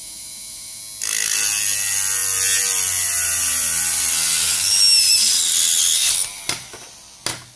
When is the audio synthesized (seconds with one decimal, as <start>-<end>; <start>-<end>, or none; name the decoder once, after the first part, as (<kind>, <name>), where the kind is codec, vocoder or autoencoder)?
0.0-0.8 (autoencoder, DAC-VAE)